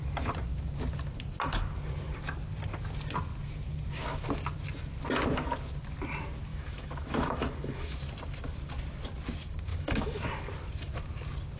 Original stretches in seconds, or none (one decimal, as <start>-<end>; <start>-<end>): 0.0-6.5; 8.0-9.7; 10.2-11.6